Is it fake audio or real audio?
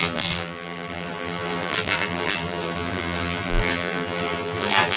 fake